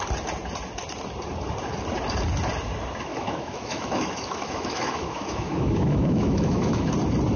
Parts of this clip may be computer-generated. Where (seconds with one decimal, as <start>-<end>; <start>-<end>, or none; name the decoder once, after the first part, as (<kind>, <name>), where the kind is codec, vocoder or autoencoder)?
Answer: 3.1-6.9 (autoencoder, DAC-VAE)